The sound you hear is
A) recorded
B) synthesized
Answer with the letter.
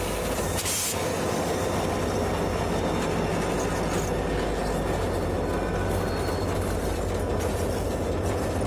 A